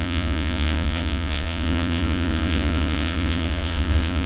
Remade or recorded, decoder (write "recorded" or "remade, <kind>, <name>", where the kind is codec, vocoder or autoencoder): remade, vocoder, Vocos